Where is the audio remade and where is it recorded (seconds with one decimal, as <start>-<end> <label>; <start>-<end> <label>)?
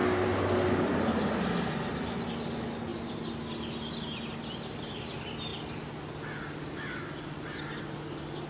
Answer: 0.0-8.5 recorded